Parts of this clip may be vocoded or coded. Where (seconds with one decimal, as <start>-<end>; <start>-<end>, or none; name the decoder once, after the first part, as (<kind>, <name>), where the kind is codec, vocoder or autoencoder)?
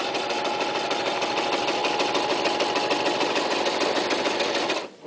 none